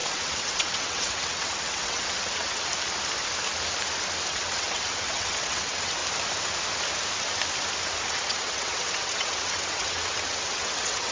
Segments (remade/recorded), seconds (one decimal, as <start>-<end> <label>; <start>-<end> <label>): 0.0-2.7 remade; 2.7-4.3 recorded; 4.3-6.0 remade; 6.0-8.1 recorded; 8.1-11.1 remade